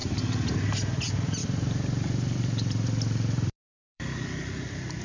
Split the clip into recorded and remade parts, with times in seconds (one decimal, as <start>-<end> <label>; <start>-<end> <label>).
0.0-1.4 recorded; 1.4-4.4 remade; 4.4-5.0 recorded